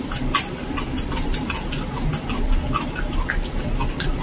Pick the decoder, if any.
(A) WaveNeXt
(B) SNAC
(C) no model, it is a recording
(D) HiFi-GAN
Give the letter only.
C